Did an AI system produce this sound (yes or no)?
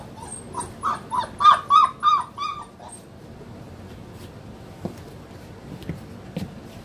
no